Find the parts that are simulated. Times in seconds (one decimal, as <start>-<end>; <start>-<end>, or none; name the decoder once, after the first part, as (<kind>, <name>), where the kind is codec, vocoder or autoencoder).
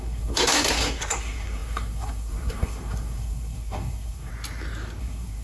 0.0-4.3 (codec, SNAC); 5.0-5.4